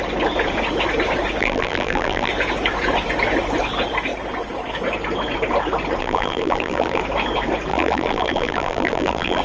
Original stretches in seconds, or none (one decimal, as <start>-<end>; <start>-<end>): 0.0-1.4; 2.3-6.0; 7.0-7.7